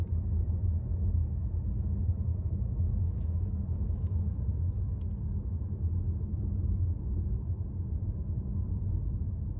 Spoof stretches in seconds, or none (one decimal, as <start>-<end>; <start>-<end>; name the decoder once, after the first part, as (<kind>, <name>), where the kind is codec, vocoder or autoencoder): 2.3-4.4 (autoencoder, DAC-VAE)